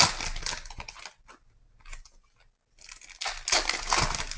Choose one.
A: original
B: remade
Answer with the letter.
A